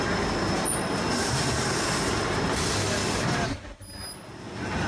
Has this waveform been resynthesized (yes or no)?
no